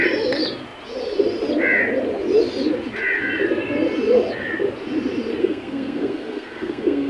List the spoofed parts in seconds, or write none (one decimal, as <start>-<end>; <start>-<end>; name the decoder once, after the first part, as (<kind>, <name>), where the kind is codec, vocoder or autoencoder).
5.4-7.1 (codec, SNAC)